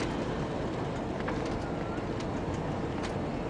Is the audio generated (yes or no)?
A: no